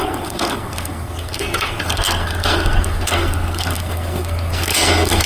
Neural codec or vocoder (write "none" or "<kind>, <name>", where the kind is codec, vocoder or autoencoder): codec, SNAC